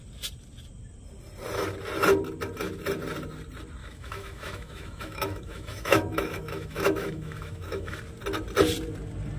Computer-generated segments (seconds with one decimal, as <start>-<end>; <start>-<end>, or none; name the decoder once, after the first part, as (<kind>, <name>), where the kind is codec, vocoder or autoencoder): 3.8-8.0 (autoencoder, DAC-VAE)